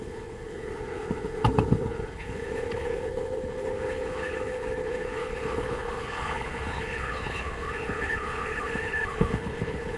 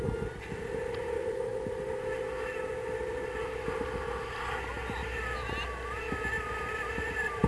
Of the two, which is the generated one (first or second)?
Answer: first